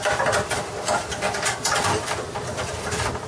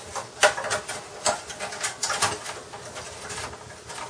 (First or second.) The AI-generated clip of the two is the first